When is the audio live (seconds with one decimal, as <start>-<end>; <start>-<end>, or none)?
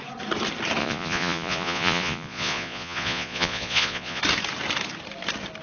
0.0-0.8; 4.2-5.6